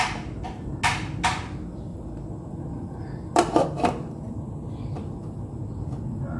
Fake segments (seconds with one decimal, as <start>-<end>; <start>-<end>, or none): 1.9-5.7

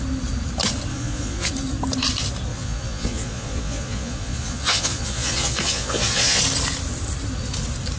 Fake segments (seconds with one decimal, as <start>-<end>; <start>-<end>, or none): 0.9-1.5; 2.5-6.4

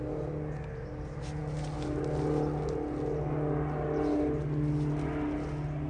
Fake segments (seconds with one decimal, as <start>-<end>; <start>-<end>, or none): none

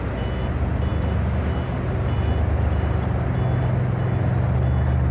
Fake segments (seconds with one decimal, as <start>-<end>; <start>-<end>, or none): none